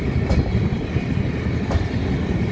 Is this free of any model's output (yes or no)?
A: yes